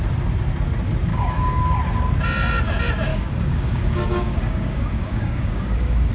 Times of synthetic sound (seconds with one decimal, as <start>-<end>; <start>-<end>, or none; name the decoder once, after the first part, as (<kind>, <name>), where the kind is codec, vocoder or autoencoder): 1.1-1.8 (codec, DAC); 3.1-6.1